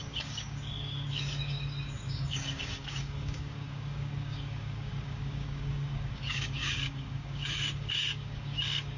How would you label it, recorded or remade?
remade